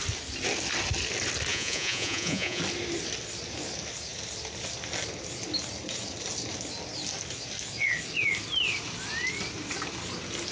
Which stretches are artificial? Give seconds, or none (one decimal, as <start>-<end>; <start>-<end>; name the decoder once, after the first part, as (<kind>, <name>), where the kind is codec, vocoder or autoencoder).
1.5-2.6 (vocoder, Vocos)